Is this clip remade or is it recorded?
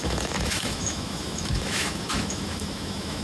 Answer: remade